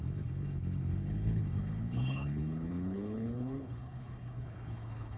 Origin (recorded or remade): remade